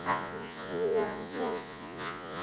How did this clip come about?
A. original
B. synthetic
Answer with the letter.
B